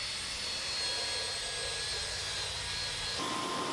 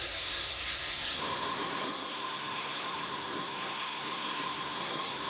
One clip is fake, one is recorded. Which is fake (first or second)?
second